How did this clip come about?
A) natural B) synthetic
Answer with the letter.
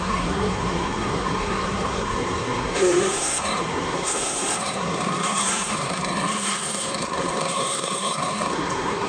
B